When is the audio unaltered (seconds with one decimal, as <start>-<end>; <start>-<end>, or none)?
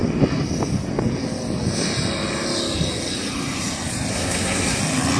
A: 0.0-4.1; 4.8-5.2